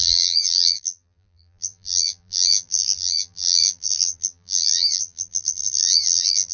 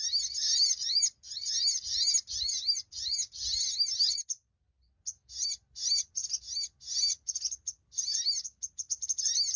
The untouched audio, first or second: second